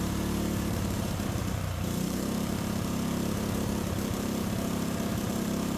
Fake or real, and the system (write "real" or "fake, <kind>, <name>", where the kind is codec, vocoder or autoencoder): fake, vocoder, BigVGAN v2